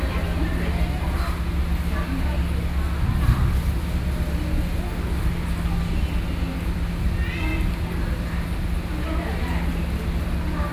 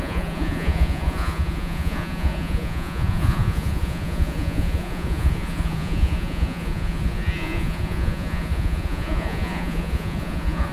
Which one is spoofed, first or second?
second